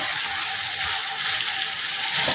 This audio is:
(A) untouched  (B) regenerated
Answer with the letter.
A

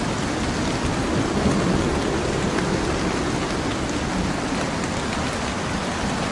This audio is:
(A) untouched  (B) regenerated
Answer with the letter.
A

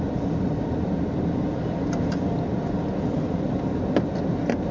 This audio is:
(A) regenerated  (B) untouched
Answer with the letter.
B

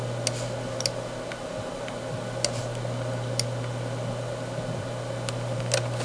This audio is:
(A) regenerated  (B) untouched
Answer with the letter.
B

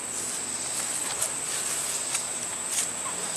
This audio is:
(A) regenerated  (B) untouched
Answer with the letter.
B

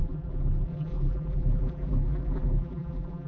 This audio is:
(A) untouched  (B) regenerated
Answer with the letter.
B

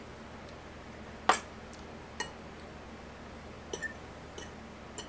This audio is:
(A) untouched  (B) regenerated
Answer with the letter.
A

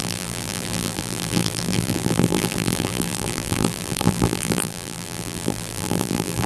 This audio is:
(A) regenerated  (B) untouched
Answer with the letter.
A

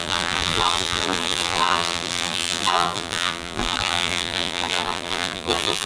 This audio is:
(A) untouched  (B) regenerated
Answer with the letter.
B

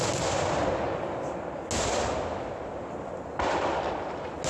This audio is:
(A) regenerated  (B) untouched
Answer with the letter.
B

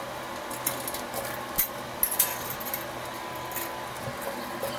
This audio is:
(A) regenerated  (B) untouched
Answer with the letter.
B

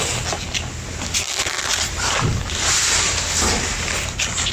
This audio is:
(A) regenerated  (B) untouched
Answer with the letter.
B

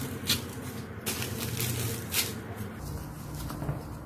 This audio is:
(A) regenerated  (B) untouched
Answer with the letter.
B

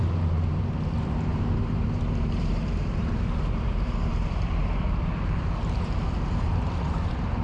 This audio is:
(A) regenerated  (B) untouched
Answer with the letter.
A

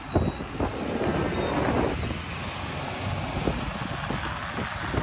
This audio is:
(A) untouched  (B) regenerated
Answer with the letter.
A